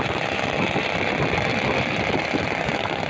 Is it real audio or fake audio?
real